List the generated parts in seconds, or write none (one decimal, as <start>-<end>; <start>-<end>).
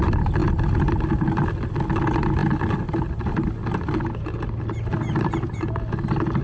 none